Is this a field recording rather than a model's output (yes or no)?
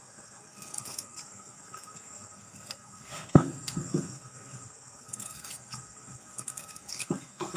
no